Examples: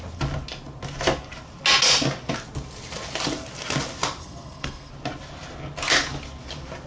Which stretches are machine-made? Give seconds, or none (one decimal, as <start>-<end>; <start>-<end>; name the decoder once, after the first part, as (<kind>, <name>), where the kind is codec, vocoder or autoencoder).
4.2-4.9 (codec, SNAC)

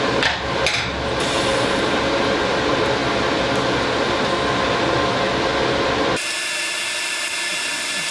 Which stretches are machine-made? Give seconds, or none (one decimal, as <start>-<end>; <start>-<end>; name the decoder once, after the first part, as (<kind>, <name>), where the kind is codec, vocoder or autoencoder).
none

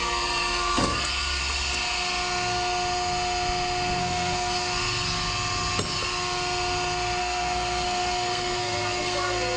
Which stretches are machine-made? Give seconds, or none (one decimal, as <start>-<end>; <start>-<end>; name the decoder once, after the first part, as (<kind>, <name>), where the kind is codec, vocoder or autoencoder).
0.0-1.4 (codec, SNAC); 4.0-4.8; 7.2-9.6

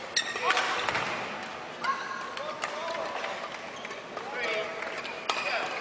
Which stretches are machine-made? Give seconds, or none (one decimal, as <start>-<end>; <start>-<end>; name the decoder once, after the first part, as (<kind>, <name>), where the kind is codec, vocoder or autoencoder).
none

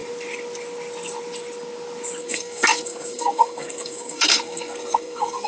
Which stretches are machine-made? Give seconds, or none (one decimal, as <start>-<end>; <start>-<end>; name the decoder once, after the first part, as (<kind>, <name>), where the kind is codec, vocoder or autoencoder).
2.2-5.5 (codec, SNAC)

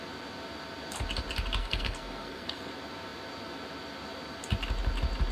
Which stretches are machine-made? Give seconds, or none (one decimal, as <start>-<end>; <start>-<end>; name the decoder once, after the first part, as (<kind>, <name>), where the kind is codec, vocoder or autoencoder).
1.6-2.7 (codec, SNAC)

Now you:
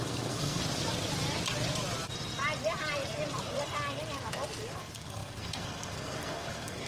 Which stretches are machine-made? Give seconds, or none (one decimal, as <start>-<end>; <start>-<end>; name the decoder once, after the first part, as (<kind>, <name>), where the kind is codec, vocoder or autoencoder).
0.0-0.6 (codec, SNAC); 4.7-6.9

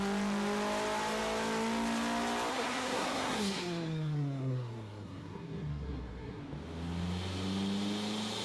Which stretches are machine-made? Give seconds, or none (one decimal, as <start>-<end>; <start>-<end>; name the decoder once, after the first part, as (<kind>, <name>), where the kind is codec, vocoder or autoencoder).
2.5-6.4 (codec, SNAC)